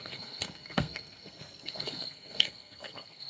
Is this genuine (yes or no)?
no